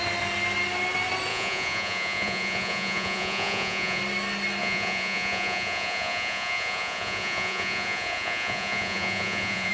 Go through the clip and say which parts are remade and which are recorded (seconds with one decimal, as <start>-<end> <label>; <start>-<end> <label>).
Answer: 0.0-1.3 recorded; 1.3-4.0 remade; 4.0-4.6 recorded; 4.6-9.7 remade